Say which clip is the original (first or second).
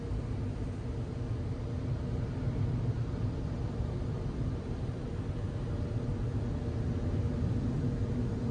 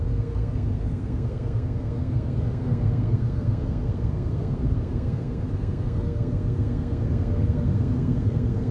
first